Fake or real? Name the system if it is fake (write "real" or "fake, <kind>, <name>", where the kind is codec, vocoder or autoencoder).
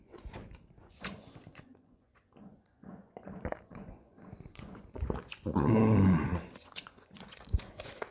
fake, vocoder, Vocos